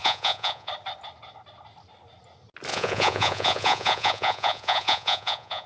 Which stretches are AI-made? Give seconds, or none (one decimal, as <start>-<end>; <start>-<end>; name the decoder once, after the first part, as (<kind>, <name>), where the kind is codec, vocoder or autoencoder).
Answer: 0.0-0.7 (vocoder, Vocos); 2.7-5.7